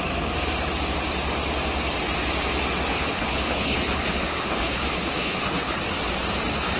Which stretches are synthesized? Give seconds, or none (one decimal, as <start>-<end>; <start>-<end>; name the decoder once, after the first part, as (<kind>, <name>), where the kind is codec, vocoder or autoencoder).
2.9-5.8 (codec, HILCodec)